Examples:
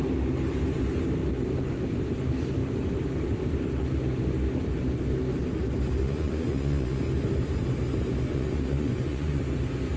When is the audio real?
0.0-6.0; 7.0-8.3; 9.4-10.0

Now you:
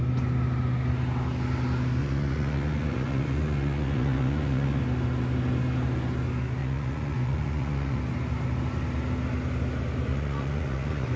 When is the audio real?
0.0-2.0; 4.8-6.6; 8.0-10.1

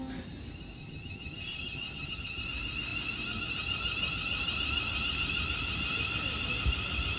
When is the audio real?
0.0-0.8; 2.4-7.2

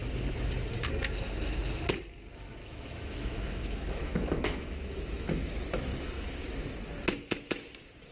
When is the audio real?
0.0-2.6; 5.5-5.9; 6.4-8.1

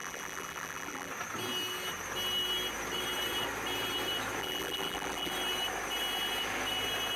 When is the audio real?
1.1-4.4; 5.3-7.2